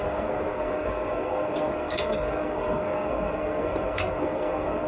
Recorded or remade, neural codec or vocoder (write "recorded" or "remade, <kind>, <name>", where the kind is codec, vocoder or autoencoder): remade, codec, SNAC